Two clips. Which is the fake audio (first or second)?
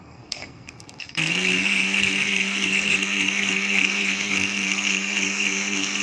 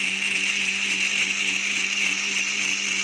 first